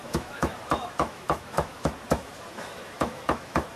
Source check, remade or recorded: remade